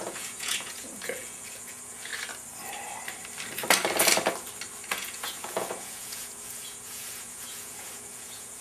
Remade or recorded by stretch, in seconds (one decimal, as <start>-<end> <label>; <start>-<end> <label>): 0.0-2.1 remade; 2.1-4.8 recorded; 4.8-8.6 remade